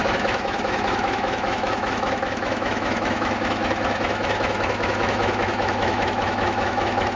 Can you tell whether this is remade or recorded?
remade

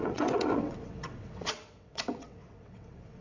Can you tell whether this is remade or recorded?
remade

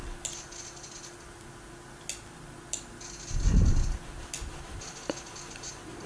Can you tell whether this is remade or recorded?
recorded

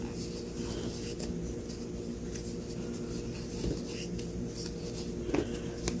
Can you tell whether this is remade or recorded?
recorded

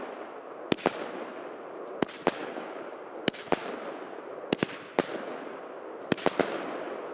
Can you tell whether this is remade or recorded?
recorded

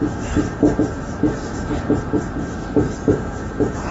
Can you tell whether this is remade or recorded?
remade